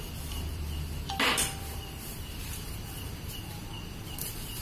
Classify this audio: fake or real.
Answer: fake